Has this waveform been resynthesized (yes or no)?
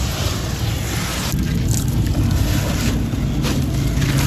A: no